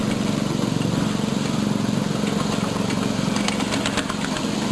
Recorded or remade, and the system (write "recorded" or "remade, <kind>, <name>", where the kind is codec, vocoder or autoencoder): recorded